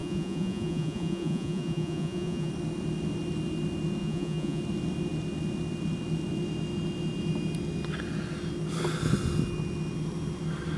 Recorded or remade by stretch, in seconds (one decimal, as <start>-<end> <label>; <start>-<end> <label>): 0.0-2.5 remade; 2.5-4.0 recorded; 4.0-4.6 remade; 4.6-10.8 recorded

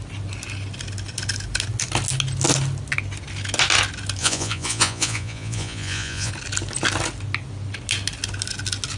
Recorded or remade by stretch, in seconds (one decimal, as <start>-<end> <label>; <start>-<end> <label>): 0.0-4.2 recorded; 4.2-6.3 remade; 6.3-9.0 recorded

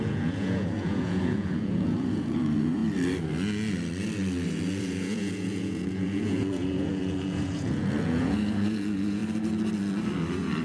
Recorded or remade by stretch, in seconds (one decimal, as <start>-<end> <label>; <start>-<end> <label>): 0.0-2.8 remade; 2.8-4.7 recorded; 4.7-9.2 remade; 9.2-10.6 recorded

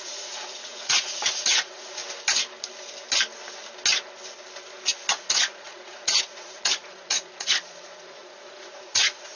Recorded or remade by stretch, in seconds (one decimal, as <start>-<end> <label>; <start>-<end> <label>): 0.0-2.0 remade; 2.0-5.1 recorded; 5.1-9.4 remade